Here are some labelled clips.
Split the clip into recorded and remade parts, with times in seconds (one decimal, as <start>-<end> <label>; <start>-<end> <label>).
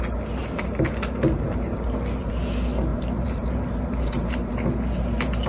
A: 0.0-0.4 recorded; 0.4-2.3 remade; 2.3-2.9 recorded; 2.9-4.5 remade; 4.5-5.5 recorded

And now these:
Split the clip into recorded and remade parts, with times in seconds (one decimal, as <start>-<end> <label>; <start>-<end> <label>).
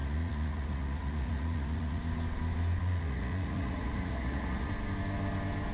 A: 0.0-2.0 remade; 2.0-2.8 recorded; 2.8-4.7 remade; 4.7-5.7 recorded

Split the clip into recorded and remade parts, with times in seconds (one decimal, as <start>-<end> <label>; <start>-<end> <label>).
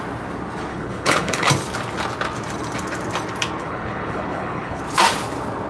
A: 0.0-0.7 recorded; 0.7-1.5 remade; 1.5-3.6 recorded; 3.6-4.8 remade; 4.8-5.7 recorded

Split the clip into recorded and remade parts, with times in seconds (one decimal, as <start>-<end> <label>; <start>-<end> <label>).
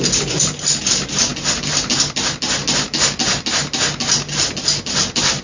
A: 0.0-5.4 recorded